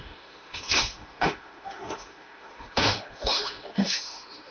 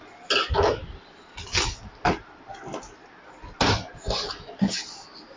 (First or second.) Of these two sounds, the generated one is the first